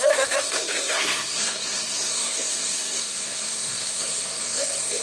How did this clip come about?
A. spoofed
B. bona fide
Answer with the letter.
A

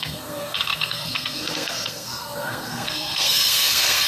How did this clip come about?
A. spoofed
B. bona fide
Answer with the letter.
A